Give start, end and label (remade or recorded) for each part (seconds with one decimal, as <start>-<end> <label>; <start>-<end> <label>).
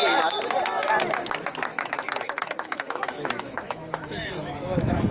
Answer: 0.0-1.7 recorded; 1.7-5.1 remade